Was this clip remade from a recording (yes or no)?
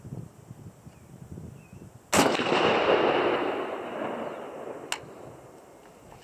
no